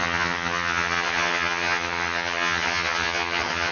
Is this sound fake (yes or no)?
yes